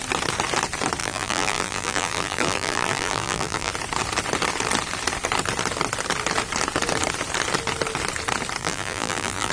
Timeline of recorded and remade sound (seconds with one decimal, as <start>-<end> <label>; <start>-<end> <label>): 0.0-1.0 recorded; 1.0-3.7 remade; 3.7-8.6 recorded; 8.6-9.5 remade